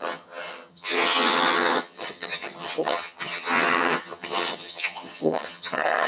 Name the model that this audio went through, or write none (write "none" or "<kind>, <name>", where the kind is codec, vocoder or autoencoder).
vocoder, HiFi-GAN